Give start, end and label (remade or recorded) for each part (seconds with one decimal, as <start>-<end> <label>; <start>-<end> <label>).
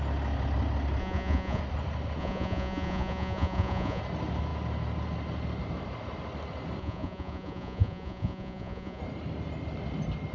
0.0-1.0 recorded; 1.0-1.6 remade; 1.6-2.2 recorded; 2.2-4.0 remade; 4.0-6.8 recorded; 6.8-9.0 remade; 9.0-10.3 recorded